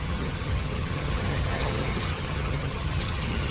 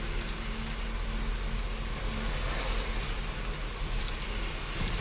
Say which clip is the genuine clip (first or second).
second